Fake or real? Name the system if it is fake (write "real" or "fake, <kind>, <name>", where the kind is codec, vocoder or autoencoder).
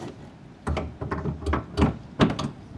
real